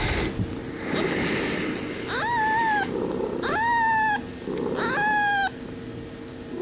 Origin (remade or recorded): recorded